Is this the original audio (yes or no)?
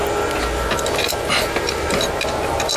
yes